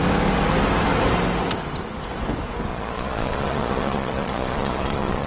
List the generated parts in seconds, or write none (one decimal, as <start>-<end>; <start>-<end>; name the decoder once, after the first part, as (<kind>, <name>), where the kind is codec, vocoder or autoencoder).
2.7-5.3 (vocoder, Vocos)